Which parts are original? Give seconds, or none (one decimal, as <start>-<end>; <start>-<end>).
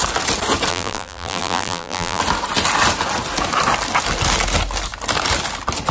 0.0-0.7; 2.2-5.9